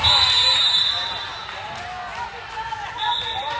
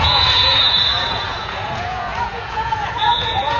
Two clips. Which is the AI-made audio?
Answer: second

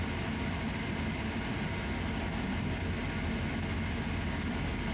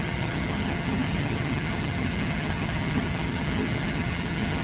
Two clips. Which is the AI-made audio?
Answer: second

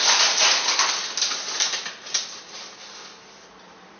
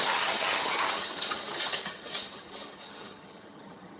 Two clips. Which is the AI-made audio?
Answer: second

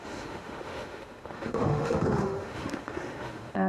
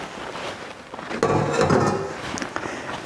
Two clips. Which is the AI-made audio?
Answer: first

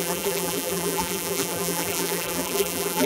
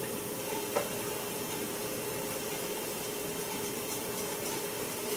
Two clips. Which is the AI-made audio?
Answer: first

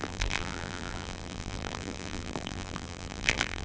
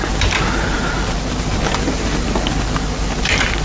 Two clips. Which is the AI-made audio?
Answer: first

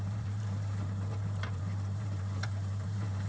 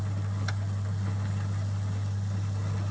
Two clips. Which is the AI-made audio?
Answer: first